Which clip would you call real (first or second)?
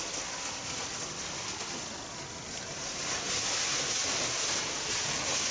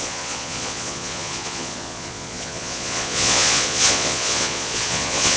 first